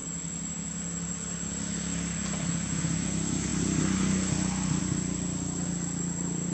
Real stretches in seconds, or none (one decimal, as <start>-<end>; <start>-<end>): 0.0-6.5